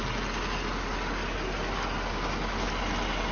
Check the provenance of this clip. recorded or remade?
recorded